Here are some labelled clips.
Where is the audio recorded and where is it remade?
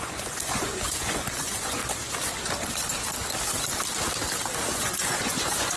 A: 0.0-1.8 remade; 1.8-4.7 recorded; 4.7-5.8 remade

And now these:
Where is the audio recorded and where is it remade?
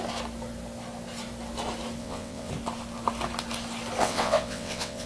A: 0.0-2.0 recorded; 2.0-2.5 remade; 2.5-4.0 recorded; 4.0-5.1 remade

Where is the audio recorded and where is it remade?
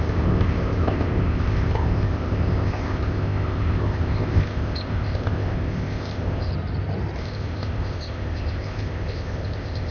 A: 0.0-6.5 remade; 6.5-7.2 recorded; 7.2-9.9 remade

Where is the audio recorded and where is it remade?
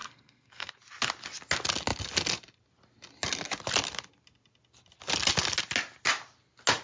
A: 0.0-0.7 remade; 0.7-6.8 recorded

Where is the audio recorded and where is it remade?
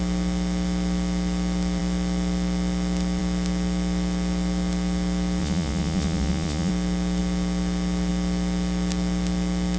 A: 0.0-5.4 recorded; 5.4-6.7 remade; 6.7-9.8 recorded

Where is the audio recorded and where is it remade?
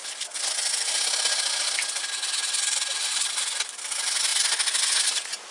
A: 0.0-5.5 recorded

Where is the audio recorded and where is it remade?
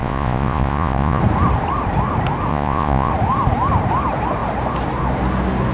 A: 0.0-1.2 remade; 1.2-2.5 recorded; 2.5-3.1 remade; 3.1-5.7 recorded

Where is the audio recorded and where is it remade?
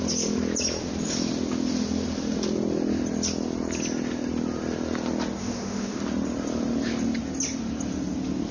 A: 0.0-5.4 recorded; 5.4-6.0 remade; 6.0-8.5 recorded